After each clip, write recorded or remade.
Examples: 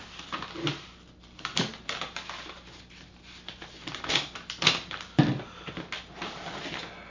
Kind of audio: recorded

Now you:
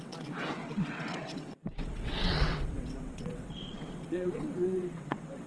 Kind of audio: remade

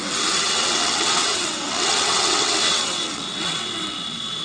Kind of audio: remade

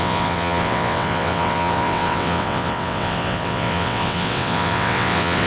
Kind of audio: remade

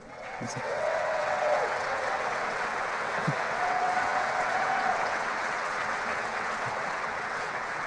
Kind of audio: remade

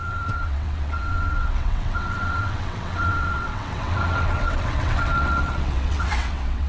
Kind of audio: remade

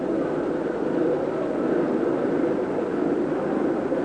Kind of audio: recorded